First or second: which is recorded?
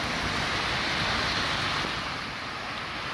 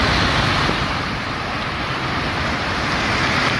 first